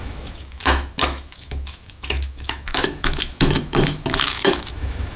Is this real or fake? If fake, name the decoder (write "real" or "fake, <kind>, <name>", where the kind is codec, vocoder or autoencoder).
fake, autoencoder, DAC-VAE